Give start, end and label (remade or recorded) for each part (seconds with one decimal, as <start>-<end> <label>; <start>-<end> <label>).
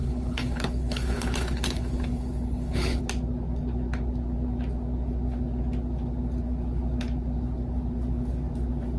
0.0-3.0 remade; 3.0-9.0 recorded